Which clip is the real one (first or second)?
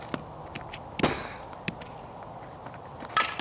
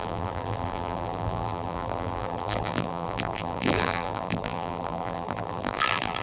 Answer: first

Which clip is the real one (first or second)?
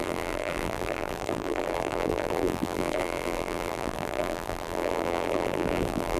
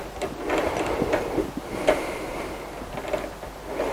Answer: second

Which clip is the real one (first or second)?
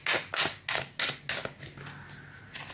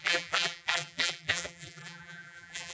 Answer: first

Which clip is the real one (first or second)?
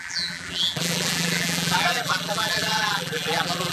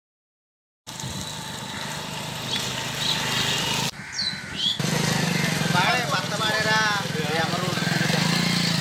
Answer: second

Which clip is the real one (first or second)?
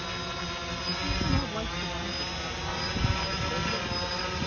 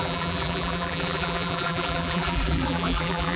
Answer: first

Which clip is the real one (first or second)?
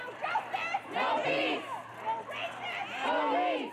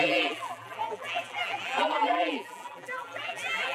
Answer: first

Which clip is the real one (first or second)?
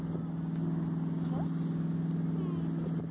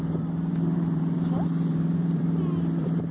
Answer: first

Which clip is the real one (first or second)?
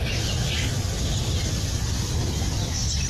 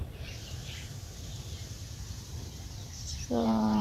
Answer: first